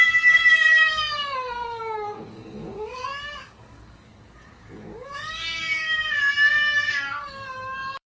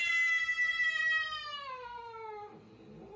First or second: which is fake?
first